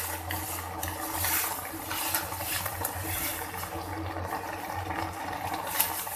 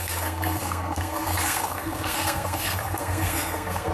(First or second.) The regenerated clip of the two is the second